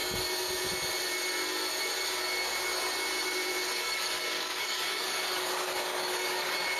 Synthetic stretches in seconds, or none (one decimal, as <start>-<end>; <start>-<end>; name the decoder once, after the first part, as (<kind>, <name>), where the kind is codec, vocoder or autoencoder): 3.7-6.8 (codec, DAC)